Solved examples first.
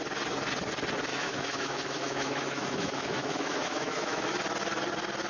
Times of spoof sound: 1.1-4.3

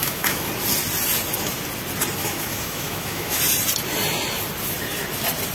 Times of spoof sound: 0.0-0.5; 2.2-3.4

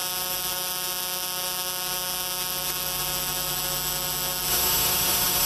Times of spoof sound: 4.5-5.5

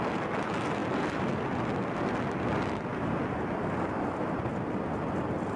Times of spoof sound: none

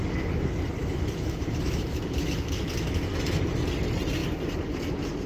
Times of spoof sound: 0.8-3.4